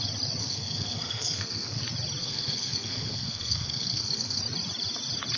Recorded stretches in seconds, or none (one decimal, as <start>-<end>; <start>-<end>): 0.0-0.4; 1.8-2.2; 4.4-5.4